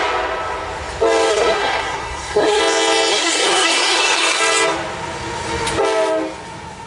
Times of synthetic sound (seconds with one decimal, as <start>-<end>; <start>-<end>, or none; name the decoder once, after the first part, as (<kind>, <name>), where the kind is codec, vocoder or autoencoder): 1.3-2.6 (codec, SNAC); 3.1-4.4